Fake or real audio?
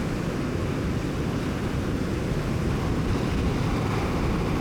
real